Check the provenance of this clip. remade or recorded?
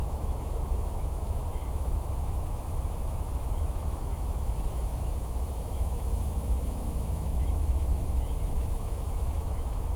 remade